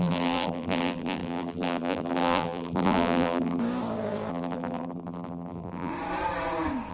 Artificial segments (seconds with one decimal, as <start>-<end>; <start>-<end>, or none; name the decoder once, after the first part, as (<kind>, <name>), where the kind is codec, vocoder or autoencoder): 0.0-3.6 (vocoder, BigVGAN v2); 4.3-5.9